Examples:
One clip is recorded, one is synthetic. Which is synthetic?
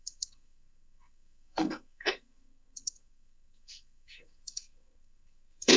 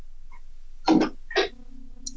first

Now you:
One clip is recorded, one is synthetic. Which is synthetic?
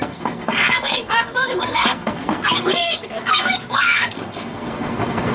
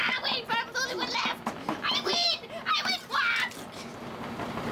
first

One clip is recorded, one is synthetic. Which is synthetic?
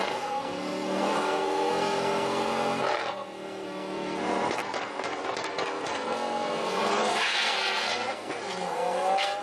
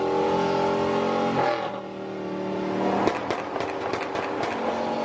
first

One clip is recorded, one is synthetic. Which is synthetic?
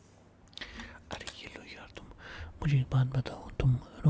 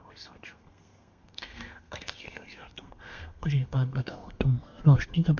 second